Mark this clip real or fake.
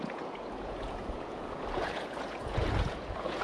fake